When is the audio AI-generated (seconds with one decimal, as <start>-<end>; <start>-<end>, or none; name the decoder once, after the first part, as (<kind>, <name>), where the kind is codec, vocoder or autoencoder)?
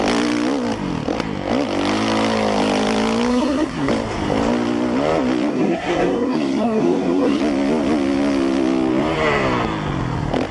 3.3-3.9 (codec, SNAC); 5.5-7.4